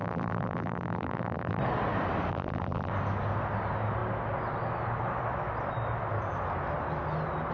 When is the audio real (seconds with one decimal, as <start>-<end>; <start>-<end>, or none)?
1.6-2.3; 2.9-7.5